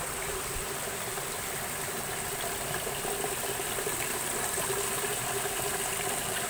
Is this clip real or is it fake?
fake